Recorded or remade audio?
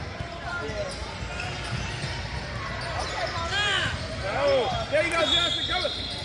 recorded